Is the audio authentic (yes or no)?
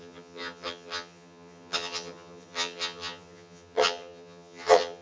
no